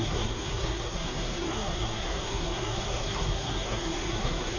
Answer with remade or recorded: remade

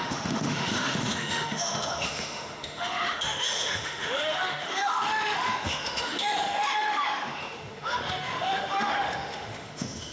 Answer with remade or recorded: remade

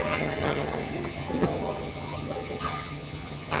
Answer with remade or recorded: remade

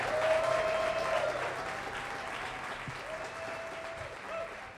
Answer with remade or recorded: recorded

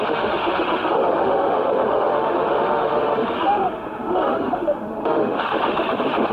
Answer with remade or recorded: remade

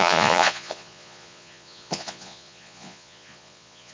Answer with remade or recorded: remade